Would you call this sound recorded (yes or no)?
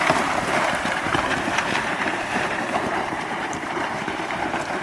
no